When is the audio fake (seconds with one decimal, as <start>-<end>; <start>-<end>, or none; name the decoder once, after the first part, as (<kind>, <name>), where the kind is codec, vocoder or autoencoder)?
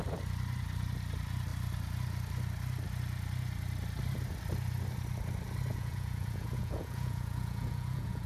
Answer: 5.7-8.3 (vocoder, Vocos)